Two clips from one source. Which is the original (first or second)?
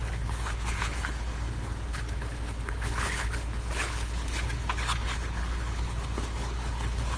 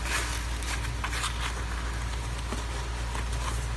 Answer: second